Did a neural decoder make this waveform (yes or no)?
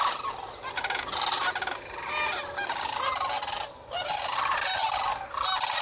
no